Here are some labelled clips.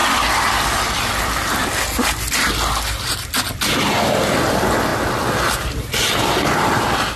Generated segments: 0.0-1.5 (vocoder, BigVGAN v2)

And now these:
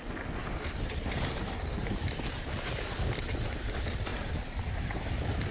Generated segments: 0.4-3.3 (vocoder, BigVGAN v2); 4.1-5.5

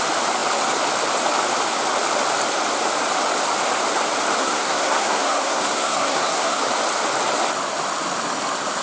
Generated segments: 4.4-6.6 (codec, SNAC)

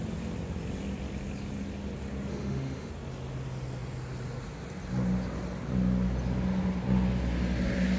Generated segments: 2.3-2.9 (autoencoder, DAC-VAE)

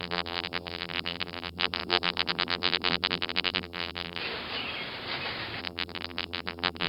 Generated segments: 0.0-4.2 (vocoder, BigVGAN v2); 5.6-6.9

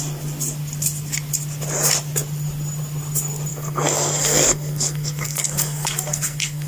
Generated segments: 3.5-6.7 (codec, SNAC)

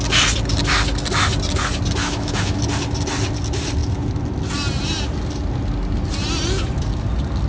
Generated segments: 2.0-2.6 (autoencoder, DAC-VAE)

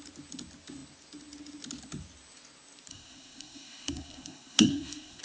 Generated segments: 2.9-5.2 (codec, SNAC)